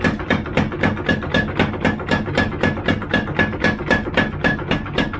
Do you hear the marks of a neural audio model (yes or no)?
no